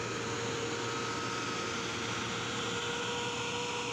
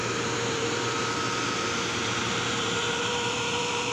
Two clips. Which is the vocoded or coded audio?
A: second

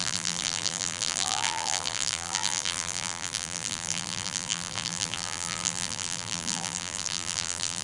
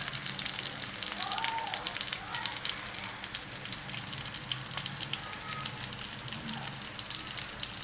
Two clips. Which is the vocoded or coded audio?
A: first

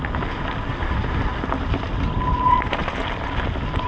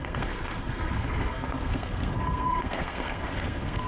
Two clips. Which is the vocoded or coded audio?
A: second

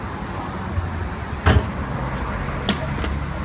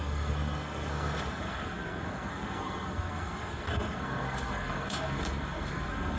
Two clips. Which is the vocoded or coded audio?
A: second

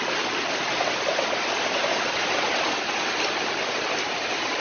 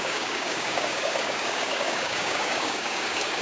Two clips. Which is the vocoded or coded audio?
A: second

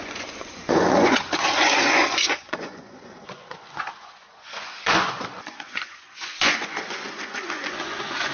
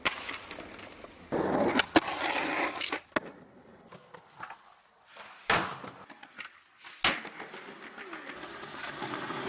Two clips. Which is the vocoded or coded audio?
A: first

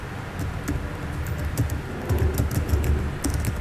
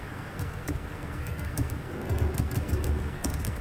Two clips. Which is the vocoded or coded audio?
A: second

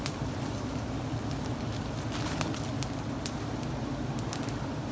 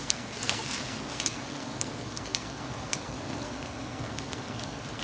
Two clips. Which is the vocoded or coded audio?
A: second